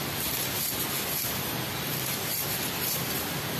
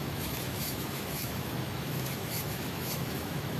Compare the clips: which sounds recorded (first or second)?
first